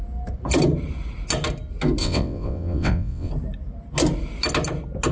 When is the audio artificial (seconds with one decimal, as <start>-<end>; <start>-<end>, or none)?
2.0-3.3